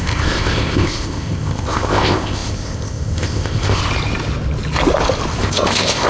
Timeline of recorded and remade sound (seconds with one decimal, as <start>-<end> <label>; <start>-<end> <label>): 0.0-3.8 remade; 3.8-5.4 recorded; 5.4-6.1 remade

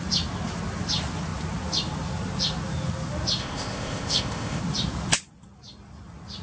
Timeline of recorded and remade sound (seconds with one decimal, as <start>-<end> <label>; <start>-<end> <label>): 0.0-3.4 recorded; 3.4-4.6 remade; 4.6-6.4 recorded

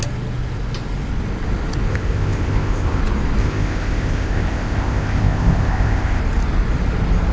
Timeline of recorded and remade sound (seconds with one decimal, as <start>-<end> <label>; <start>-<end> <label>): 0.0-1.9 recorded; 1.9-3.0 remade; 3.0-3.4 recorded; 3.4-6.2 remade; 6.2-7.3 recorded

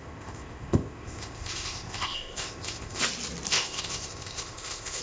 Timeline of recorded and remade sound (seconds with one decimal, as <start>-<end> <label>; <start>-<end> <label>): 0.0-3.0 remade; 3.0-3.5 recorded; 3.5-5.0 remade

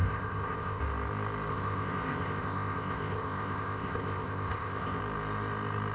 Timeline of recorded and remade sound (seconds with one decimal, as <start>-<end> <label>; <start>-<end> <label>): 0.0-0.8 remade; 0.8-1.5 recorded; 1.5-5.0 remade; 5.0-5.9 recorded